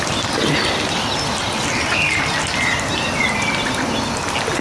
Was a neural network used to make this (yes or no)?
no